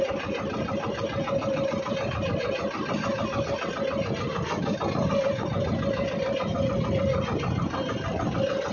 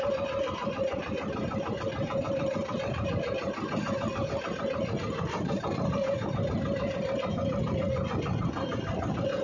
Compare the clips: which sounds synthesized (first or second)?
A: second